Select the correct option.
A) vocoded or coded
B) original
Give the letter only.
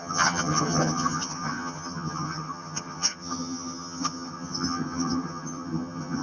A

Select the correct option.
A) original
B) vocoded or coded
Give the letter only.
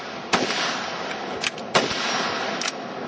A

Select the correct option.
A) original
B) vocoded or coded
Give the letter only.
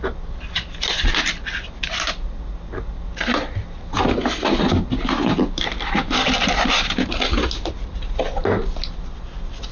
A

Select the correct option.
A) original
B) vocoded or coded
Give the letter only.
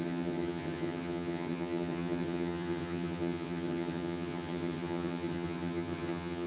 B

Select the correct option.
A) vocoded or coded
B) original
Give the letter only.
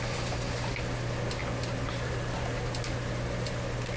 B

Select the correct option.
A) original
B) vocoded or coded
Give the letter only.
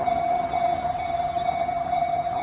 B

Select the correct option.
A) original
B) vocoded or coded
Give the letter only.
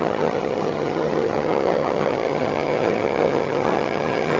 B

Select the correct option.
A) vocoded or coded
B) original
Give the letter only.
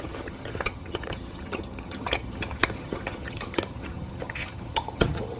A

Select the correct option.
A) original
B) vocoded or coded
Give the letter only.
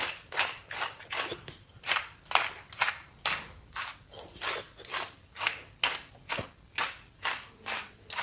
A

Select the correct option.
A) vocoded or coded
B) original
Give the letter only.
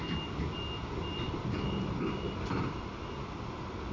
B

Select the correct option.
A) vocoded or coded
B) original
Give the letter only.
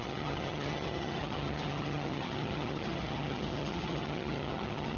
A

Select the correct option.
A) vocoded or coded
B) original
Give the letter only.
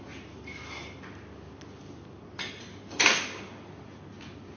B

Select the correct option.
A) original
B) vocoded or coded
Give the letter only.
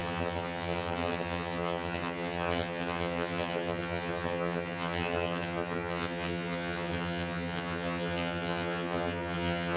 B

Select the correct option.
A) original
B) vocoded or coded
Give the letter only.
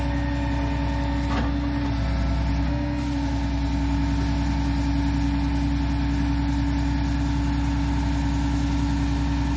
A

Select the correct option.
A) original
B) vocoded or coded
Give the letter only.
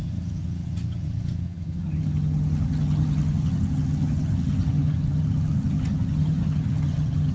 B